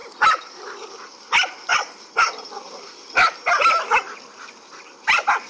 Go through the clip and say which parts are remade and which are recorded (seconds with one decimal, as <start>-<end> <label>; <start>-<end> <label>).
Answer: 0.0-5.5 recorded